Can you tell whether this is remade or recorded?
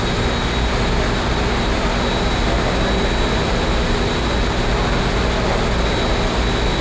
recorded